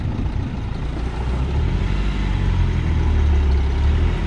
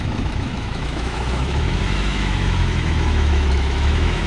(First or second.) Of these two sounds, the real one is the first